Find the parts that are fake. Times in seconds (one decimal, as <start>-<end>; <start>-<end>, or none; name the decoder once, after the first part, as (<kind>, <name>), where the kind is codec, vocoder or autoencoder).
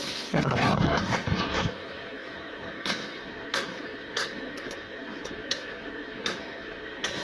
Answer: 0.0-7.2 (codec, SNAC)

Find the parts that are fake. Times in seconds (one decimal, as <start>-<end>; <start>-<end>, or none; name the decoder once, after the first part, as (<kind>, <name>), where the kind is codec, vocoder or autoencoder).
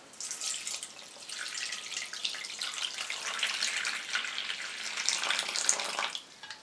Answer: none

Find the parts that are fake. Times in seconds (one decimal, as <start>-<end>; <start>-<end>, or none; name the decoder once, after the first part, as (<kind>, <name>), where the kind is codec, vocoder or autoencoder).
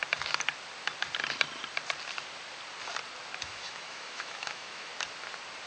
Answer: 3.4-4.9 (autoencoder, DAC-VAE)